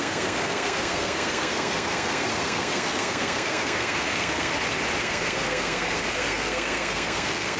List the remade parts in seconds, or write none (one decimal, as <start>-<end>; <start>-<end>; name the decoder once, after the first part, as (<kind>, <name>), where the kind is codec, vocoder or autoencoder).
0.0-4.5 (codec, SNAC); 5.0-7.6